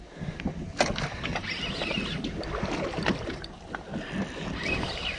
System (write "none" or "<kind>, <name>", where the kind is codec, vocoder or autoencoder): none